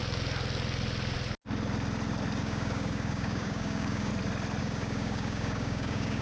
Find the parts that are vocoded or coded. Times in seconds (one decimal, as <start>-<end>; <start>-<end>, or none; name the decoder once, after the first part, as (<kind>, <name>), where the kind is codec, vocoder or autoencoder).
2.4-4.1 (codec, DAC); 4.6-6.2